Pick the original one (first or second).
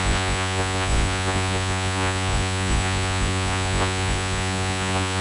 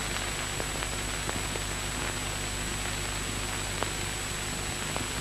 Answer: second